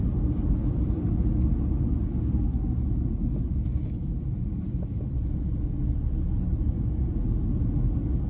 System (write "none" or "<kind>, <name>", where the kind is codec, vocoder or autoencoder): none